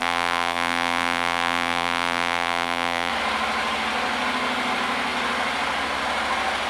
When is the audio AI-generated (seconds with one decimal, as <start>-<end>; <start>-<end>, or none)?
0.0-3.1